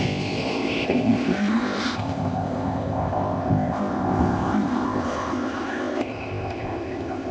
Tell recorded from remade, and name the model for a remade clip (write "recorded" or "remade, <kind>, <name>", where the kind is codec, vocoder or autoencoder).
remade, codec, ZipCodec